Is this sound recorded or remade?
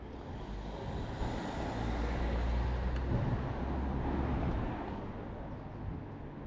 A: recorded